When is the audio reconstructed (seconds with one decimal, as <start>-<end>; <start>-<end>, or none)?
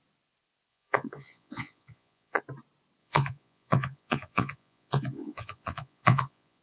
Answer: 0.7-2.4; 3.0-6.6